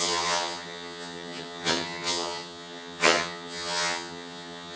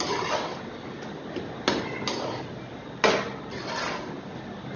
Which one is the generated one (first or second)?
first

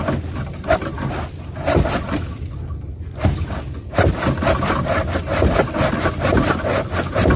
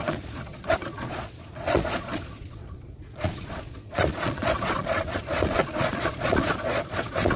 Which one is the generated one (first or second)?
second